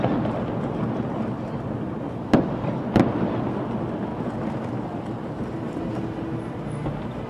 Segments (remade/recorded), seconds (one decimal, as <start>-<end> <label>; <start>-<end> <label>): 0.0-7.3 recorded